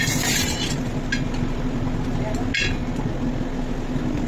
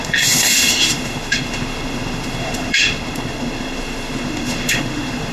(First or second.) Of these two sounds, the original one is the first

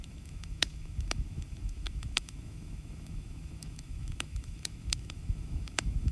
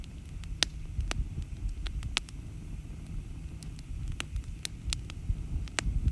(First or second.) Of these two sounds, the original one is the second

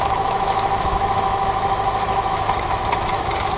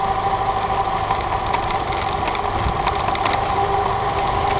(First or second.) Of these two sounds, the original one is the second